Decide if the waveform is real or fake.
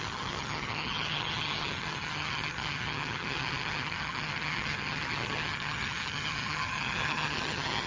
fake